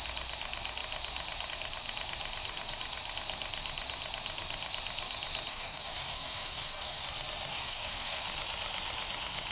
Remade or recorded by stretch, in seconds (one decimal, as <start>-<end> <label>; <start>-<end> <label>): 0.0-5.5 recorded; 5.5-7.0 remade; 7.0-7.5 recorded; 7.5-8.2 remade; 8.2-9.5 recorded